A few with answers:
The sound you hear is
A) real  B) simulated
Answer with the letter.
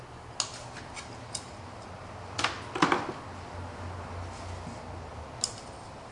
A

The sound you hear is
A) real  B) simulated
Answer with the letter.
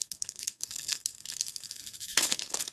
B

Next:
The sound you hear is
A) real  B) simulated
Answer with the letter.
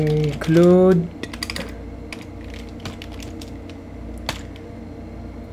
A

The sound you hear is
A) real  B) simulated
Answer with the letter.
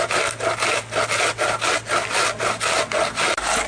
A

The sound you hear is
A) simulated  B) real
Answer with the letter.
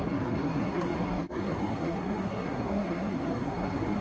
A